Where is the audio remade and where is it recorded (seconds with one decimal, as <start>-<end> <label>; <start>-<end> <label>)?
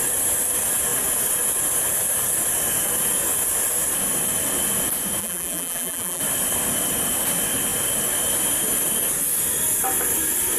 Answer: 0.0-5.2 recorded; 5.2-6.2 remade; 6.2-10.6 recorded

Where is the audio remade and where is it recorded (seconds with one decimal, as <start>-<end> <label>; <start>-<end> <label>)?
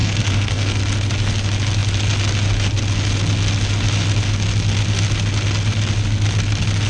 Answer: 0.0-0.8 remade; 0.8-6.9 recorded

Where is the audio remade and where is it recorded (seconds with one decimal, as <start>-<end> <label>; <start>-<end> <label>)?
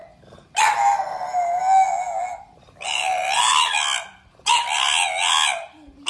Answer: 0.0-6.1 recorded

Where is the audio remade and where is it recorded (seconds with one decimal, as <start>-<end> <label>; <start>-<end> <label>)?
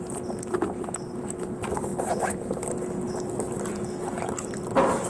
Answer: 0.0-5.1 recorded